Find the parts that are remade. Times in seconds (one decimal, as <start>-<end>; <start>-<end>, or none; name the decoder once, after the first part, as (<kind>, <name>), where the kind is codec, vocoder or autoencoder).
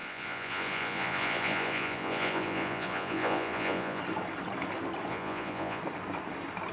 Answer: 0.0-4.0 (vocoder, Vocos); 5.1-5.8